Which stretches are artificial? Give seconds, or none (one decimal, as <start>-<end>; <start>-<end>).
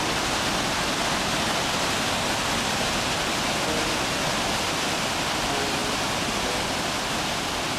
none